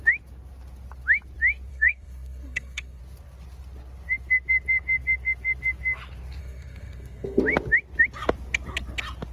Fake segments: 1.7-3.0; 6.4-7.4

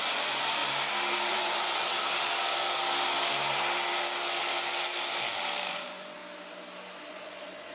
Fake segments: 0.0-0.6; 1.3-1.9; 5.7-6.2; 7.1-7.7

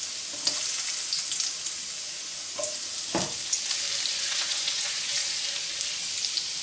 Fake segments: 2.0-2.5; 4.1-5.4

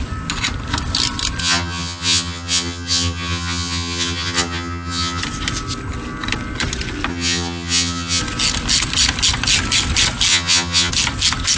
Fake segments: 1.4-5.2; 7.1-8.2; 10.3-10.9